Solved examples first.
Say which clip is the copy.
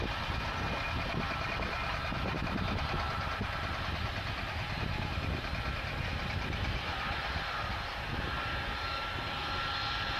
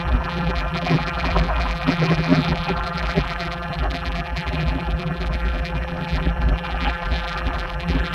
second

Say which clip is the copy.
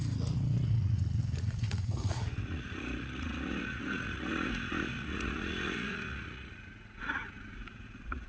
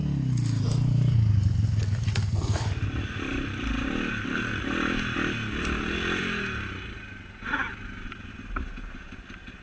first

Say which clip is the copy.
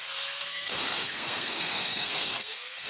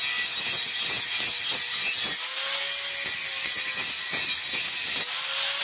first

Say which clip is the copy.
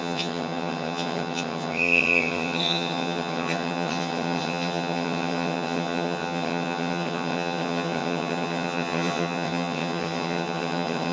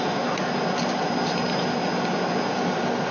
first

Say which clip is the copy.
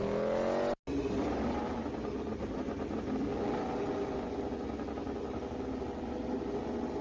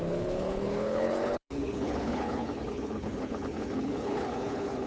second